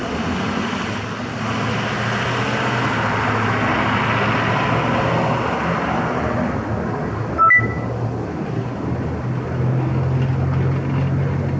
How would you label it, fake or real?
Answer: real